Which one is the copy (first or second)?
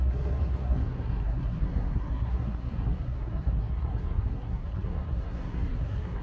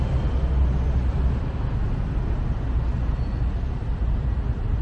first